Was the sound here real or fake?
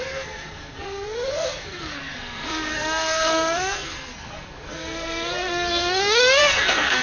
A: fake